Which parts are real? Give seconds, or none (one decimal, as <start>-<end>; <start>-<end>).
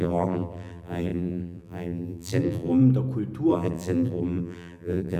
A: 2.8-3.5